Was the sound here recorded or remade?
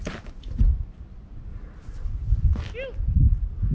recorded